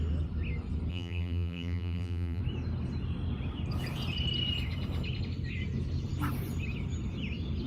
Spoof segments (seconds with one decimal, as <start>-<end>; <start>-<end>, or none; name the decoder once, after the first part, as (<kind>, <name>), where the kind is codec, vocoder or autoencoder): 0.9-2.4 (vocoder, BigVGAN v2)